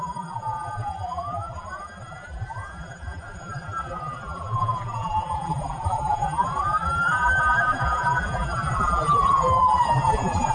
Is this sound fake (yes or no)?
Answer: yes